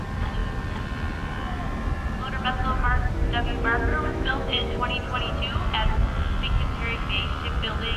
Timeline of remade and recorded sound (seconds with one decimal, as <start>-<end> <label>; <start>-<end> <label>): 0.0-3.9 recorded; 3.9-4.8 remade; 4.8-8.0 recorded